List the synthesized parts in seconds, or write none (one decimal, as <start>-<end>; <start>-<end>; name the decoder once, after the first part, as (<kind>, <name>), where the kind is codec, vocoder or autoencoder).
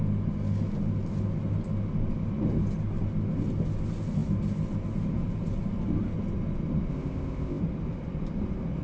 6.9-7.6 (codec, ZipCodec)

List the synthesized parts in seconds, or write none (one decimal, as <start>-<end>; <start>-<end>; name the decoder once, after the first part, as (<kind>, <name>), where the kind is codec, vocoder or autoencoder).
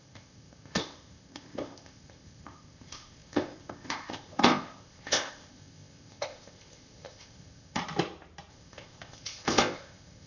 0.0-7.8 (codec, ZipCodec); 8.5-10.3